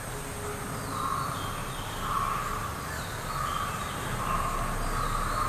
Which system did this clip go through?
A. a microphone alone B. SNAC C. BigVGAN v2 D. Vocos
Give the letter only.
A